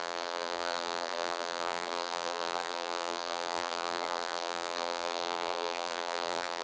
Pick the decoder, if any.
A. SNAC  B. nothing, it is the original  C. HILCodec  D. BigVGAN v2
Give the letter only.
D